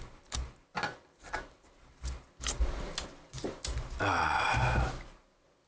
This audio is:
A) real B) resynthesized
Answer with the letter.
A